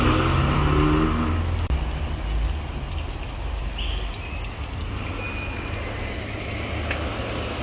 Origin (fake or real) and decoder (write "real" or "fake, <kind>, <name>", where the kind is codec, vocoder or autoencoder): real